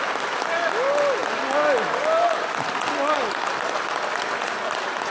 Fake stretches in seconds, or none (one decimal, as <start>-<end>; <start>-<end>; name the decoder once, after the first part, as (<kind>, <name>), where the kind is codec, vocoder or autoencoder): none